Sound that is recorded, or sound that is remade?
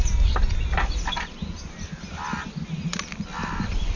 recorded